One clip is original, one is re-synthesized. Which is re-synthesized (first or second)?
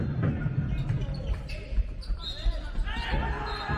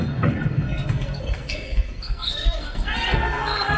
second